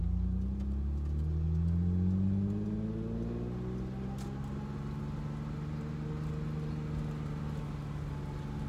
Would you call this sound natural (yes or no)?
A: yes